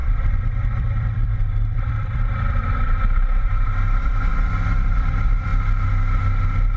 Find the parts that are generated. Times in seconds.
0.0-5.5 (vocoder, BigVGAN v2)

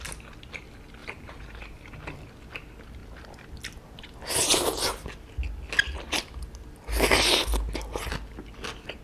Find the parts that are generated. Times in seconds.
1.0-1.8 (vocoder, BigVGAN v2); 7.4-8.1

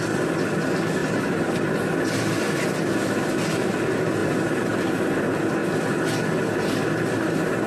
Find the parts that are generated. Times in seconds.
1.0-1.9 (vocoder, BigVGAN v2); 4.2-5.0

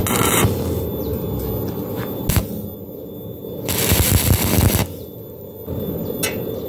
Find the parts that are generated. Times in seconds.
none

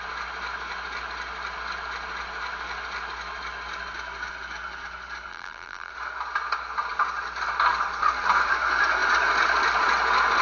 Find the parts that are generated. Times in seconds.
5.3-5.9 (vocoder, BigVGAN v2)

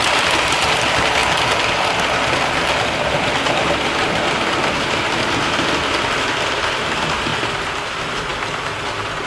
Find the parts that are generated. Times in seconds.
none

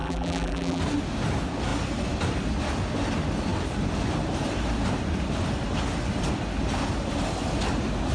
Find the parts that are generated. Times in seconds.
0.0-0.8 (vocoder, BigVGAN v2)